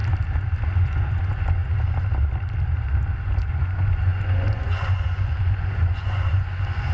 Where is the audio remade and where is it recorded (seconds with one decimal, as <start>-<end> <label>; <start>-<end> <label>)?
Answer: 0.0-0.8 recorded; 0.8-1.6 remade; 1.6-3.2 recorded; 3.2-6.9 remade